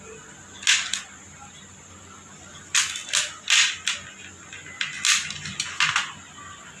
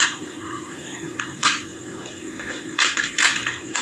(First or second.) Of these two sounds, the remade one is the second